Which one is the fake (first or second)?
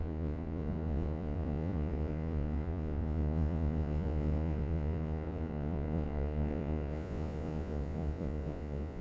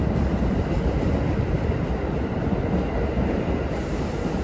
first